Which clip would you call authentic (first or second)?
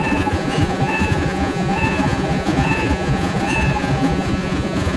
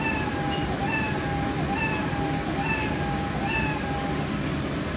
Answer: second